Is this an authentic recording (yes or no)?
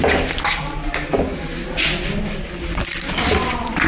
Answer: yes